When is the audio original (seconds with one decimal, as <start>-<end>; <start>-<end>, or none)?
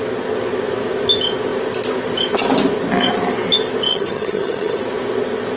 0.0-3.9; 4.8-5.6